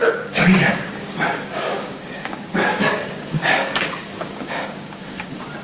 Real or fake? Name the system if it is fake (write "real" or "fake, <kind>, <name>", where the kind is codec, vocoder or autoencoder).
fake, codec, DAC